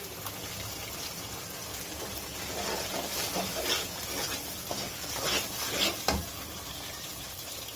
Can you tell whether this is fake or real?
real